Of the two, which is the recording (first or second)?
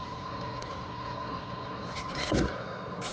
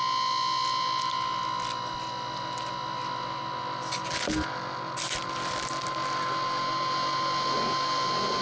second